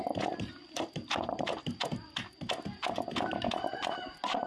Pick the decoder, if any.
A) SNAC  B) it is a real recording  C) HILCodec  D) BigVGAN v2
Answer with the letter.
B